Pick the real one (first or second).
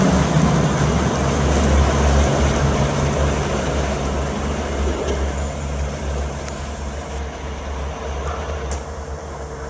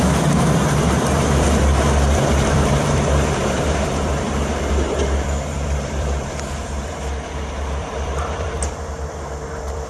first